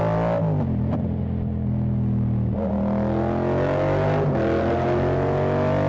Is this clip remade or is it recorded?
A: recorded